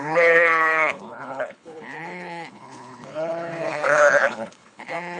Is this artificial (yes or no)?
yes